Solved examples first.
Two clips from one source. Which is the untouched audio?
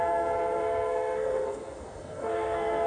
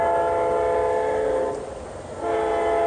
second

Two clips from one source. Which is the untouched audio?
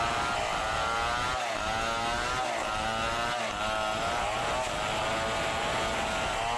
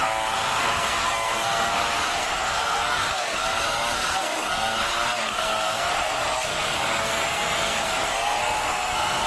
first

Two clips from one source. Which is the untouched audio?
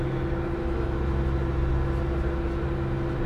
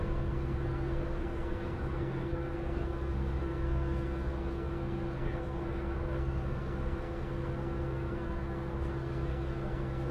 first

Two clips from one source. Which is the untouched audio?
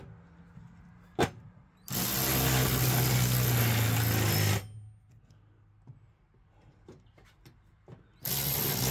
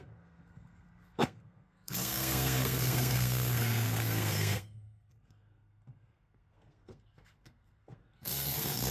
first